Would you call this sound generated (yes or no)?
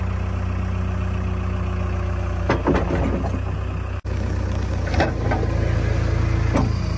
no